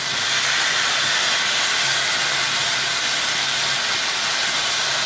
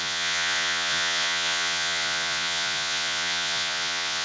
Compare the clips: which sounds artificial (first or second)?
second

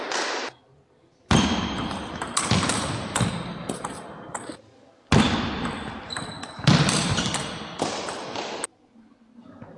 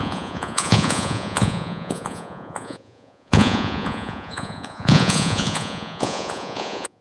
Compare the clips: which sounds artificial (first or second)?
second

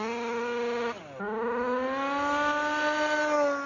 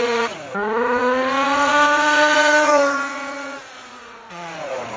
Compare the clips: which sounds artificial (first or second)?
second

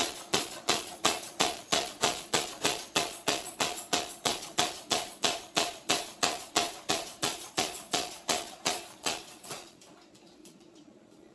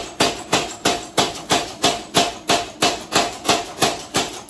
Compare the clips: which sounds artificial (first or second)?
first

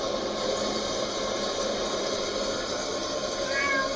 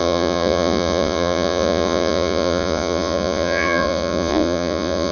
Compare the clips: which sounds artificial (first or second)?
second